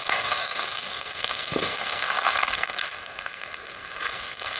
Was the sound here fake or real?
fake